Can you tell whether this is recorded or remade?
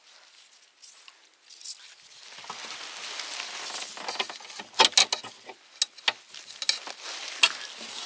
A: recorded